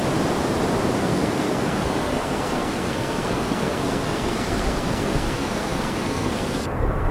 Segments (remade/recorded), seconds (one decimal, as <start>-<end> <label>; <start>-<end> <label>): 0.0-1.0 recorded; 1.0-7.1 remade